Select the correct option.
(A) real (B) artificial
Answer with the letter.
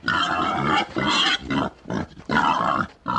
A